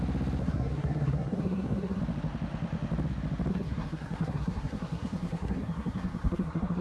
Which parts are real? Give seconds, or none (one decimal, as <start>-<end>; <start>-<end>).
0.0-0.4; 2.0-3.5